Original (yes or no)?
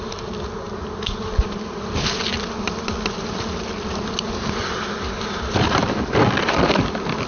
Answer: yes